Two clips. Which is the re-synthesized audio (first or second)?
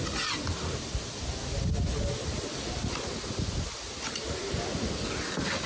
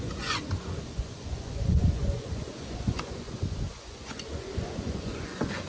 second